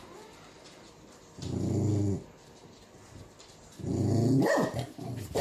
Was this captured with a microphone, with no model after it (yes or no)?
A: yes